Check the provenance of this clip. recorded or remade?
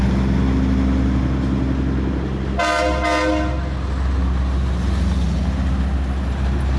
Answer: recorded